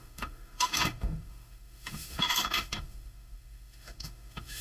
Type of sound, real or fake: fake